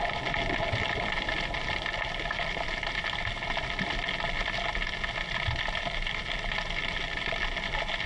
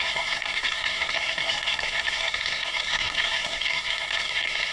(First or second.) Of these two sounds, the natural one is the first